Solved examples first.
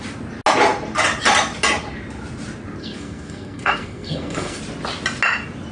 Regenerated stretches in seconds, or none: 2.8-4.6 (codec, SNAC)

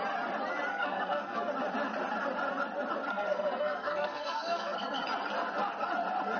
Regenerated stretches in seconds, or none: 0.7-1.5 (codec, SNAC); 3.1-5.0

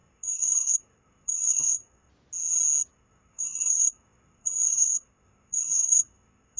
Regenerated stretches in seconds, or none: 0.0-2.1 (codec, SNAC); 2.9-6.6

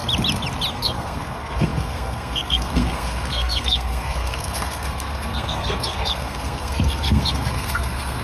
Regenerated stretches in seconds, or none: 0.7-8.2 (codec, SNAC)

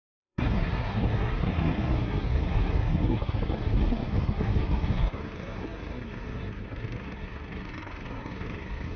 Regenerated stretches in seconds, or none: 0.0-9.0 (codec, SNAC)

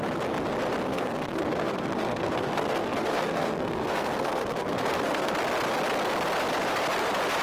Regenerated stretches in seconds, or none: 0.9-5.3 (codec, SNAC)

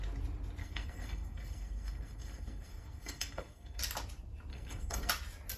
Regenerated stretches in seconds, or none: 0.6-3.8 (codec, SNAC); 4.5-5.1

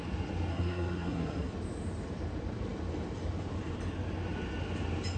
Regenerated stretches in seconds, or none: 0.5-1.5 (codec, SNAC)